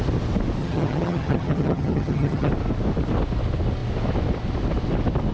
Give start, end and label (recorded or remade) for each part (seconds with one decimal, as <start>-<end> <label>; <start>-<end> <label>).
0.0-0.6 recorded; 0.6-2.5 remade; 2.5-5.3 recorded